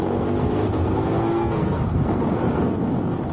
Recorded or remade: remade